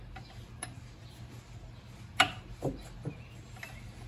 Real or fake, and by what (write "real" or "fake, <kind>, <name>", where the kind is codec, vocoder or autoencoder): real